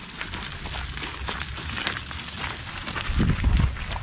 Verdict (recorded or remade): recorded